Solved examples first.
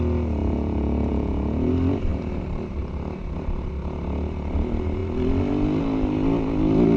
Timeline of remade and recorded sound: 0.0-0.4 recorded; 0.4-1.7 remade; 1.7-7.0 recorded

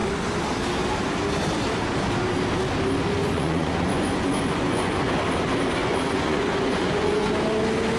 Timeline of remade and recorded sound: 0.0-3.2 recorded; 3.2-5.0 remade; 5.0-5.8 recorded; 5.8-7.3 remade; 7.3-8.0 recorded